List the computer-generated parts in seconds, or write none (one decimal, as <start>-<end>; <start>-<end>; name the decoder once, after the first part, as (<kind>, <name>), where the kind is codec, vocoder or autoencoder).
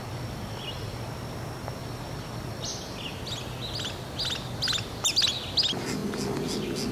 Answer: none